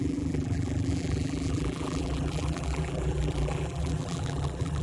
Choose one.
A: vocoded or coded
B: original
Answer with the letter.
A